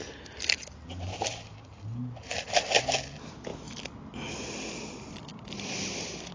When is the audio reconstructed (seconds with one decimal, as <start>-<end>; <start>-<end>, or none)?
1.3-2.3; 5.3-6.3